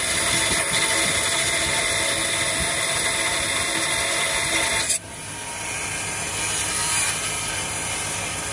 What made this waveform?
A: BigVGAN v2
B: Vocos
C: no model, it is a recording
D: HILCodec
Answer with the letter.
C